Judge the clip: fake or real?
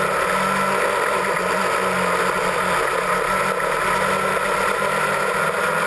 real